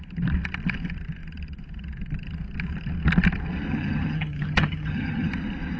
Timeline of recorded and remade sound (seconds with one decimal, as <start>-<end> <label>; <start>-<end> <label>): 0.0-3.7 recorded; 3.7-5.3 remade; 5.3-5.8 recorded